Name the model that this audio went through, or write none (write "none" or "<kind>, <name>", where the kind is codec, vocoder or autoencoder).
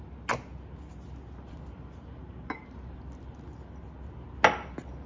none